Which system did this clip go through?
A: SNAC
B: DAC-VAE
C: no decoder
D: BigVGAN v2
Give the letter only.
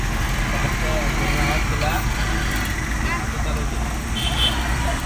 C